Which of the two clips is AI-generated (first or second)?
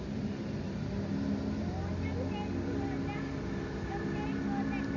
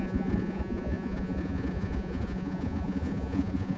second